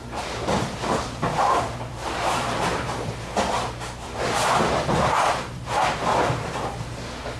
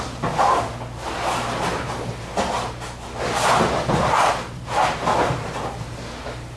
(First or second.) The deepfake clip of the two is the first